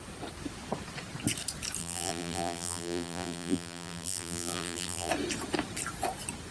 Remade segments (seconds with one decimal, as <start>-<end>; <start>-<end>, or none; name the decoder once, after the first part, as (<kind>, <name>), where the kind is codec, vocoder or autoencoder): 1.8-5.1 (vocoder, BigVGAN v2)